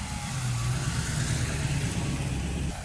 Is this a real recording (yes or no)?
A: yes